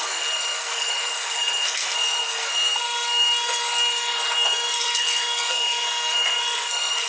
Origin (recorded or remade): remade